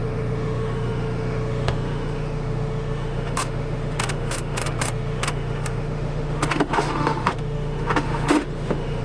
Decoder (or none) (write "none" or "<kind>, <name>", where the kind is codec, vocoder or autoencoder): autoencoder, DAC-VAE